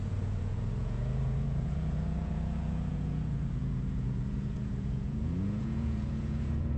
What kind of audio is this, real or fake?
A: fake